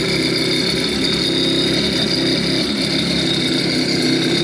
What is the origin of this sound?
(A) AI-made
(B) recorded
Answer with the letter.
B